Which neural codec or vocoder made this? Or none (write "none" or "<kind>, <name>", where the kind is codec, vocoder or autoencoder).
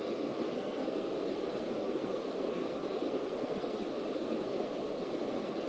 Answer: codec, SNAC